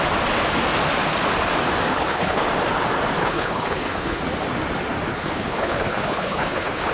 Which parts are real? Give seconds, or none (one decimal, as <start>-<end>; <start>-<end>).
0.0-1.9; 2.4-3.2; 4.2-5.1